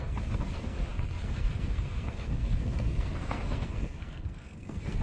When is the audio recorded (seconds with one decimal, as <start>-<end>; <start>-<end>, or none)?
none